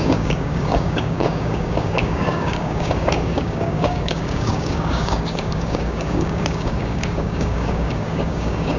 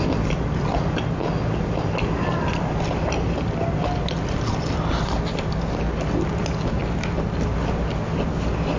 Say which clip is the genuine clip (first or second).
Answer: second